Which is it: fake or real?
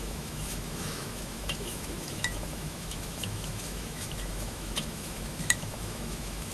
fake